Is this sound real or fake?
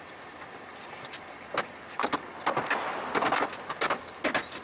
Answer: real